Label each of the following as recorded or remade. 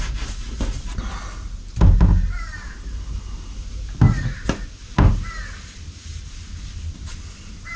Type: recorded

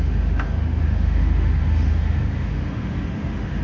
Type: remade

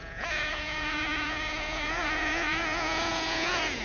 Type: remade